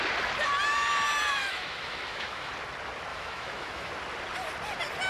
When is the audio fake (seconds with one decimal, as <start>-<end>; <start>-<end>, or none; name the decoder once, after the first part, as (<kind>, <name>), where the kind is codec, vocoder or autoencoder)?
1.4-2.5 (autoencoder, DAC-VAE); 3.1-3.9